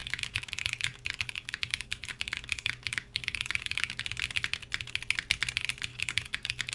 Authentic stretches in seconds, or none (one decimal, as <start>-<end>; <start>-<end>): 4.0-5.9

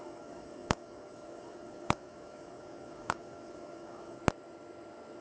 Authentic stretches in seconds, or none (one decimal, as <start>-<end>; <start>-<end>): 4.2-5.2

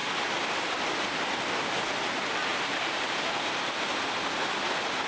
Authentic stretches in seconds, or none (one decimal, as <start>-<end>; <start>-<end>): 0.0-5.1